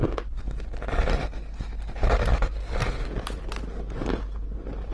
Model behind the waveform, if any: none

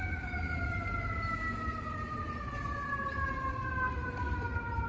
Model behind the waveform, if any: none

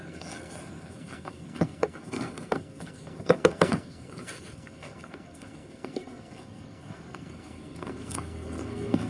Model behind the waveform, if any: codec, SNAC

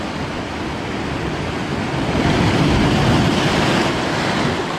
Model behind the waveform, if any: none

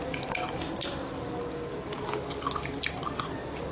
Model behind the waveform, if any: none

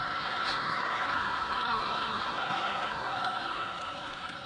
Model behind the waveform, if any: codec, SNAC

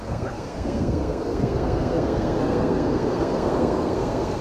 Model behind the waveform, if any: codec, SNAC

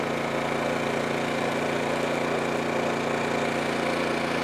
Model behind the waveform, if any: none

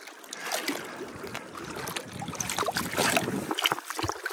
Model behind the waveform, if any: none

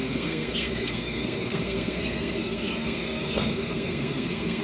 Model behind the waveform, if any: codec, SNAC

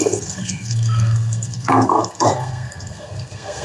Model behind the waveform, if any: codec, SNAC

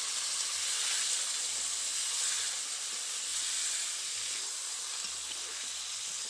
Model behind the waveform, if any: none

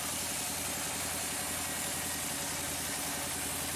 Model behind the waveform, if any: none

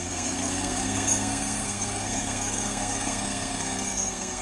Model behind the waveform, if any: codec, SNAC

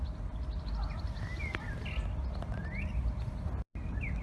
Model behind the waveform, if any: none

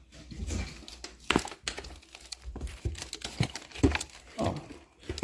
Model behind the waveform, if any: none